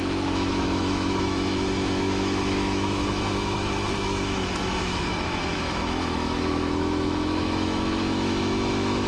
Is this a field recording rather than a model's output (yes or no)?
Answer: no